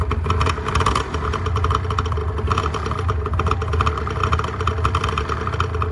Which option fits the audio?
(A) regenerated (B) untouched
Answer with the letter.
B